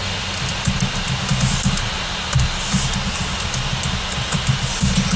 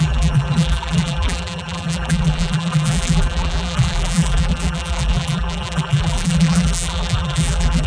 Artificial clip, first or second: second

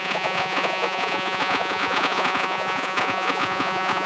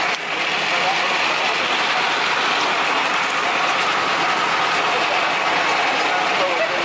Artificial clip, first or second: first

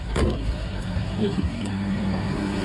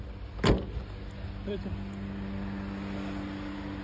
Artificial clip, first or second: first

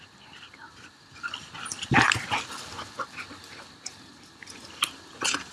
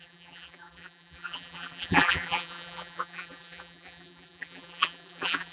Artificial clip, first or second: second